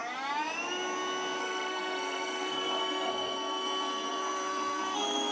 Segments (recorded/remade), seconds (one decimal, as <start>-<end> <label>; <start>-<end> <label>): 0.0-1.4 recorded; 1.4-5.3 remade

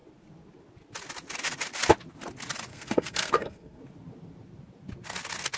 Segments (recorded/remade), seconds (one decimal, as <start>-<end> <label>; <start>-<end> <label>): 0.0-2.7 recorded; 2.7-3.8 remade; 3.8-5.6 recorded

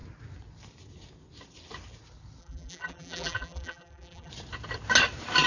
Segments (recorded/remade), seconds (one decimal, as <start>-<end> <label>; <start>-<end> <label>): 0.0-2.4 recorded; 2.4-4.3 remade; 4.3-5.5 recorded

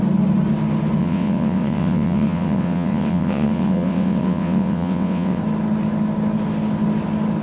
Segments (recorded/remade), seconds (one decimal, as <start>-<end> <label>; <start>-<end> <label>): 0.0-1.0 recorded; 1.0-5.4 remade; 5.4-7.4 recorded